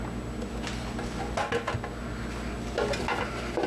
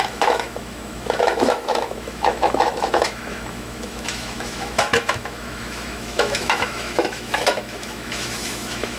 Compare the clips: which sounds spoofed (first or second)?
second